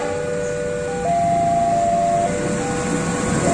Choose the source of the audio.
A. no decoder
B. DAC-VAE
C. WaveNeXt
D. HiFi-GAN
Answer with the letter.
A